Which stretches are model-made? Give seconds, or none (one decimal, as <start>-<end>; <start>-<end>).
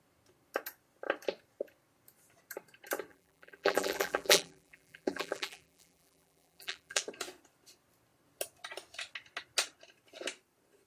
3.1-7.0